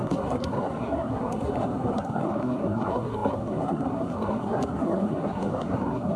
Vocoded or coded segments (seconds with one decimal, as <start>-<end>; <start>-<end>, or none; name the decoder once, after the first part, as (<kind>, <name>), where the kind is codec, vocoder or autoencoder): 0.0-6.2 (codec, SNAC)